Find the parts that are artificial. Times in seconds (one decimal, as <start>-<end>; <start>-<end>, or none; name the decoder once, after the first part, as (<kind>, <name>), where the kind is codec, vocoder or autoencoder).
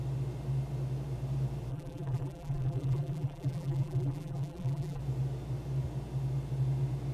1.7-5.0 (vocoder, BigVGAN v2)